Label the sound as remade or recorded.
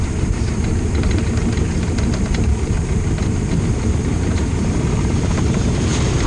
remade